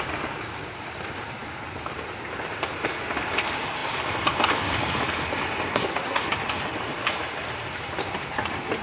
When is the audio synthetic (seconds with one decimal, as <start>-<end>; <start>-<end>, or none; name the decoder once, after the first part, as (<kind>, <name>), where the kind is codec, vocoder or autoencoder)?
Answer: 5.7-6.2 (codec, SNAC)